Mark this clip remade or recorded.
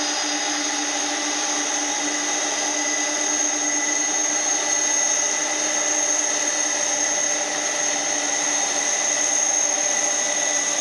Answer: recorded